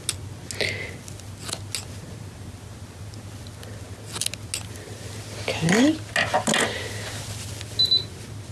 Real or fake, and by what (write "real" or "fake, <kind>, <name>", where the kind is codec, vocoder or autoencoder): real